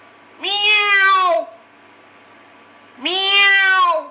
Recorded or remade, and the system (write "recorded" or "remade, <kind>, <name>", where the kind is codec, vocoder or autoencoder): recorded